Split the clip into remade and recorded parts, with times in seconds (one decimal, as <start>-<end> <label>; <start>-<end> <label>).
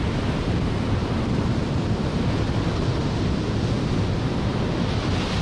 0.0-5.4 recorded